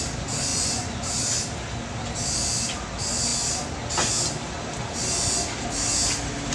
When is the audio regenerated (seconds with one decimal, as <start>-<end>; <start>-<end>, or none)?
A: 0.5-1.1